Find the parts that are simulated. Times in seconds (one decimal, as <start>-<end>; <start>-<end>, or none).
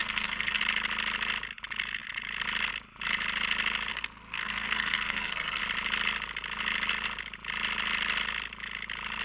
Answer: 0.0-0.6; 3.9-5.6